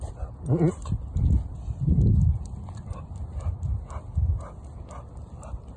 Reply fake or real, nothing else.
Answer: real